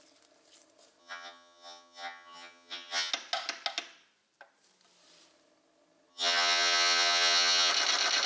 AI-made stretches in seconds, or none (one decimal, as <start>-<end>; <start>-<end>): 1.0-3.1; 6.1-7.7

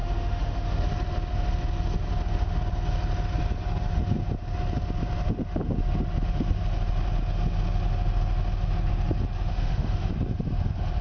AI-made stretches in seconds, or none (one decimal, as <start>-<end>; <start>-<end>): 0.0-0.8; 9.5-10.1

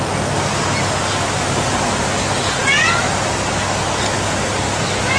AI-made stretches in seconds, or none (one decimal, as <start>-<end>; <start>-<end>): none

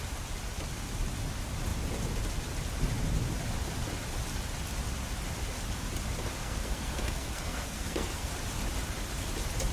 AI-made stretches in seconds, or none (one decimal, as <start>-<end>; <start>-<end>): 6.4-8.3

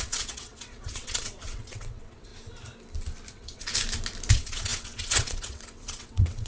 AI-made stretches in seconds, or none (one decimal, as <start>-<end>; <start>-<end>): 0.0-2.3; 3.3-3.7; 4.3-6.5

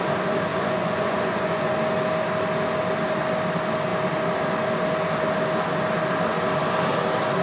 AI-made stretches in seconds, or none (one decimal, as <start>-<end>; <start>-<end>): 0.5-1.7